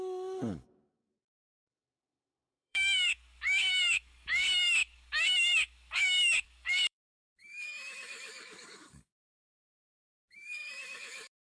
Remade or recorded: remade